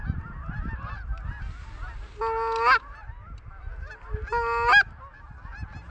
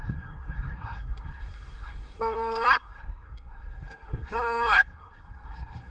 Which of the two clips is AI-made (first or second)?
second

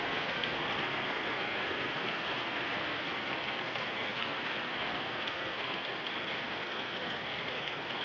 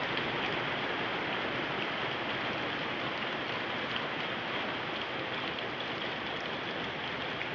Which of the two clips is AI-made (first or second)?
first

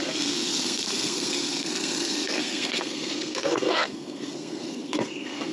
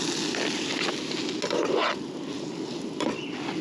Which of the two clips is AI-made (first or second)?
first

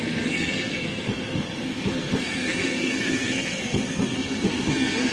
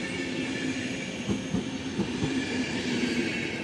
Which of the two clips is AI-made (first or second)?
first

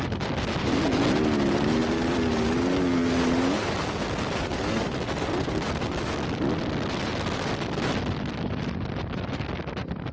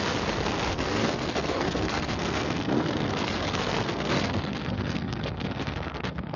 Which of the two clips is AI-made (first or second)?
second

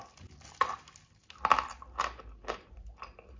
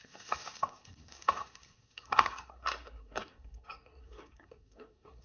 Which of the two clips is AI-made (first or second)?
second